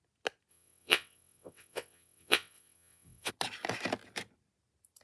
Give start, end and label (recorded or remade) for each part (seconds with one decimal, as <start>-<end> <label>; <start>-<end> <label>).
0.0-0.5 recorded; 0.5-3.3 remade; 3.3-5.0 recorded